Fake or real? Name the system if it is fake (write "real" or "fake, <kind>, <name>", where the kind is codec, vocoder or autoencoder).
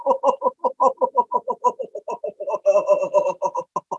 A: real